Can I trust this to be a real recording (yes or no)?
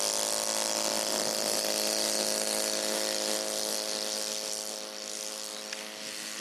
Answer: yes